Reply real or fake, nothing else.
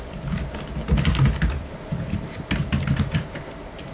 real